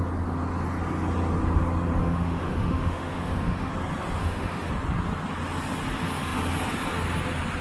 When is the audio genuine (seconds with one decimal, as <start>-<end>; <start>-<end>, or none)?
0.0-2.0; 3.7-4.2; 4.7-7.6